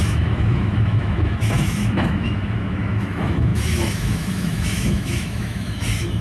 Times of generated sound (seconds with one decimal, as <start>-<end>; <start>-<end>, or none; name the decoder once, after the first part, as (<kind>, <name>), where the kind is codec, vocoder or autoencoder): 0.0-6.2 (autoencoder, DAC-VAE)